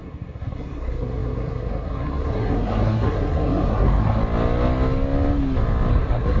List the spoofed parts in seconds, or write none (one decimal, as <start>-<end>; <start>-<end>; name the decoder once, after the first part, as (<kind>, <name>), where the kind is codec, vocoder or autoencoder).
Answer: 0.0-4.2 (codec, SNAC); 5.9-6.4